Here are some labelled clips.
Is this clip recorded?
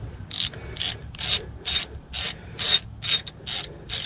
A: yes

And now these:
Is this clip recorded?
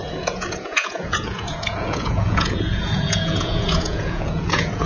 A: no